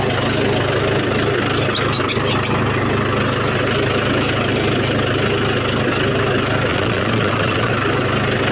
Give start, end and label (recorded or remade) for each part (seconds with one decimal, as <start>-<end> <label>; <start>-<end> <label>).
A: 0.0-6.7 recorded; 6.7-7.7 remade; 7.7-8.5 recorded

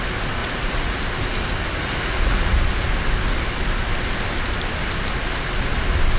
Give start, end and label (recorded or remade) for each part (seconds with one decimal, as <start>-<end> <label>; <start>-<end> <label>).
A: 0.0-0.4 recorded; 0.4-1.0 remade; 1.0-1.8 recorded; 1.8-2.6 remade; 2.6-6.2 recorded

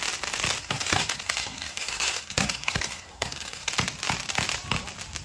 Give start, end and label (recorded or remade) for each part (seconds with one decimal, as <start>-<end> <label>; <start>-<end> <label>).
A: 0.0-0.6 recorded; 0.6-3.7 remade; 3.7-5.2 recorded

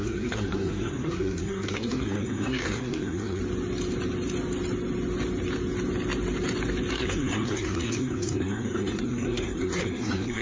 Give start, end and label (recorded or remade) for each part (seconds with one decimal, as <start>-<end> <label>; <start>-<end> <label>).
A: 0.0-3.4 remade; 3.4-6.9 recorded; 6.9-10.4 remade

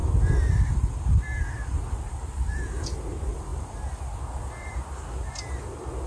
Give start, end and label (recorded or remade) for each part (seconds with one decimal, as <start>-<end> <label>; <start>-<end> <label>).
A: 0.0-6.1 recorded